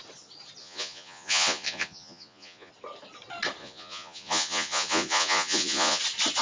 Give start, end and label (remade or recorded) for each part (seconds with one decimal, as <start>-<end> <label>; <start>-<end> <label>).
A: 0.0-0.6 recorded; 0.6-2.7 remade; 2.7-3.6 recorded; 3.6-6.0 remade; 6.0-6.4 recorded